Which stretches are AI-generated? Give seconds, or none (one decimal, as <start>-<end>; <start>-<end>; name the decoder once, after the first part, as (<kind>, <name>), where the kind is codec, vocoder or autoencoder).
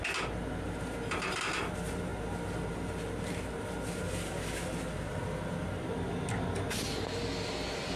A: none